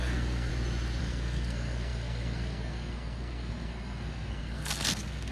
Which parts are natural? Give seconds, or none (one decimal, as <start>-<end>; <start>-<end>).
0.5-1.0